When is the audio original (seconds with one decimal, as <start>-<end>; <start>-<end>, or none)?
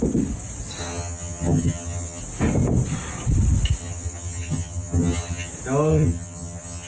0.0-0.8; 2.2-3.8; 5.5-5.9